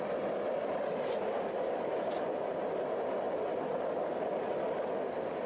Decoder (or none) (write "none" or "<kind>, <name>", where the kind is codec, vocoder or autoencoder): none